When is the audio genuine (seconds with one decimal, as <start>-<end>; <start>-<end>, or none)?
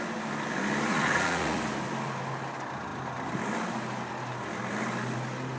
0.0-0.9; 1.6-5.6